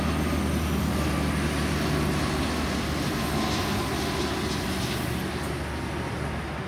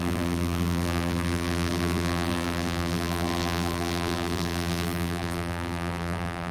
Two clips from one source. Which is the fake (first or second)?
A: second